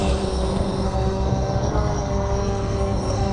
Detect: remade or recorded remade